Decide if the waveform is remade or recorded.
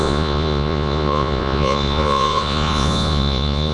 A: remade